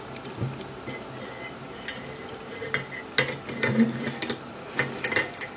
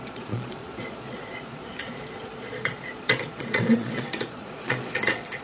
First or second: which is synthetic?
second